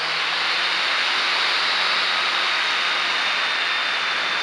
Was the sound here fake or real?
real